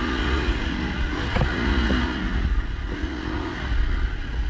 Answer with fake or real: fake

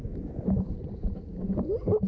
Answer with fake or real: real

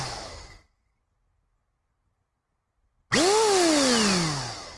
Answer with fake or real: real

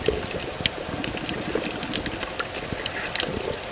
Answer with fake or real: real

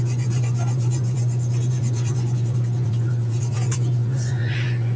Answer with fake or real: fake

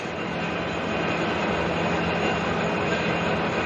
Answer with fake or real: real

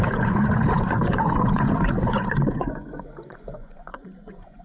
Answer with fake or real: fake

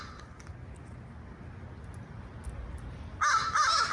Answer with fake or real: real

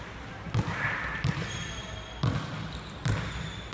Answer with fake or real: real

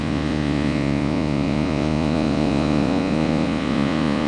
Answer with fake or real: fake